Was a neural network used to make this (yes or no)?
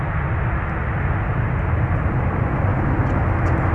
no